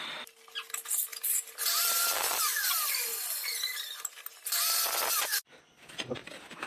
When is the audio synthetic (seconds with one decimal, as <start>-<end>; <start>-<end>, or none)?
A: 0.0-3.1; 5.6-6.2